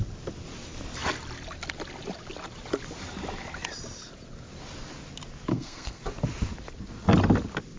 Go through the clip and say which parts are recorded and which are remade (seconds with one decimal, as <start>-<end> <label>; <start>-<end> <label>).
0.0-5.5 recorded; 5.5-6.0 remade; 6.0-7.8 recorded